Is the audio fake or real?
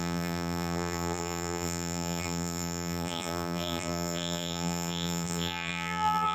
fake